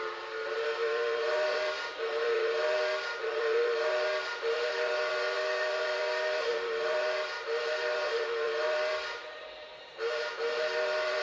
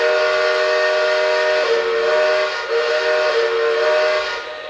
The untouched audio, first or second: second